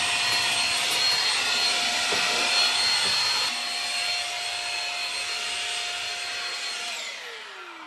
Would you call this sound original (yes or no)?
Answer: yes